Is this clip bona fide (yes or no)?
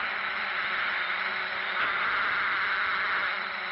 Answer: yes